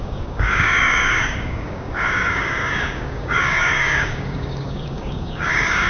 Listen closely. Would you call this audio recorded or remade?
remade